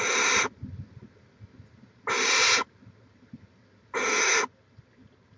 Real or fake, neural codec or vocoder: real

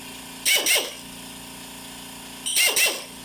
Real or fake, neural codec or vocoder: real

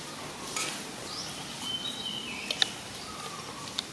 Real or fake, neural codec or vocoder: real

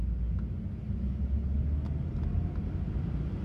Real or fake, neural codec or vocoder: real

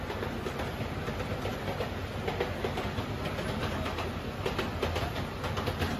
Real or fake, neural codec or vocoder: real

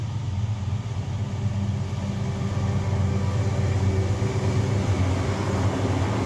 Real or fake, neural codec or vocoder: real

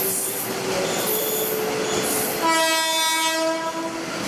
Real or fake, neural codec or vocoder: real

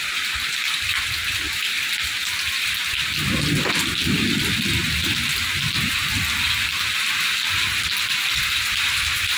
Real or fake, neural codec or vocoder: real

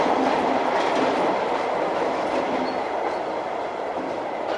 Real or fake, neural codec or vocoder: real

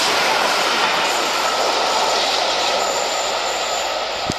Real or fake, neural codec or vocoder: real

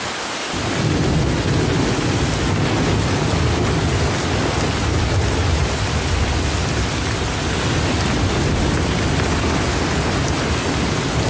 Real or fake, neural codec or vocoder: real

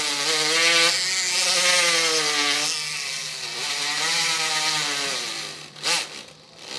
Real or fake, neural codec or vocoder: real